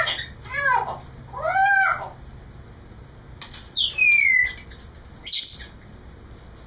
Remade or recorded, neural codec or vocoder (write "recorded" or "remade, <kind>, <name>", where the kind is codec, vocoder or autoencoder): recorded